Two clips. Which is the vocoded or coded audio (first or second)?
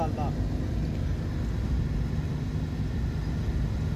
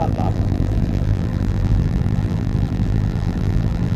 second